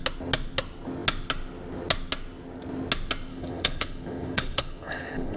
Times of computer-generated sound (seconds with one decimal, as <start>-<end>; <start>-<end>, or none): 3.3-5.4